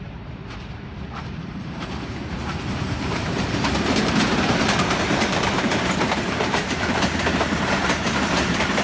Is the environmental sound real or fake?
fake